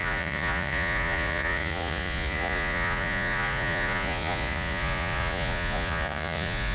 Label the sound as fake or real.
fake